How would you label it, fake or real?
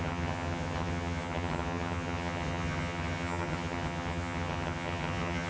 fake